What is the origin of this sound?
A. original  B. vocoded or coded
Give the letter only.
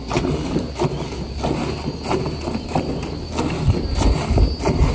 A